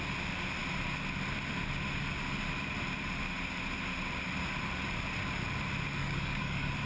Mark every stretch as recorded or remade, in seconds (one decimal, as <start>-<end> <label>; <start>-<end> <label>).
0.0-6.0 recorded; 6.0-6.9 remade